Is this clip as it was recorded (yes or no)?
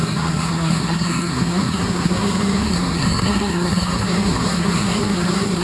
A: no